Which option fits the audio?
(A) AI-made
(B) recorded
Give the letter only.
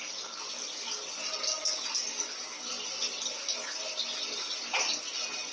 B